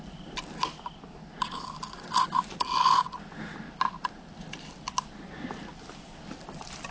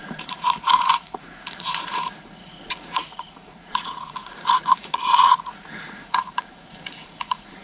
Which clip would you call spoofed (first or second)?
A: second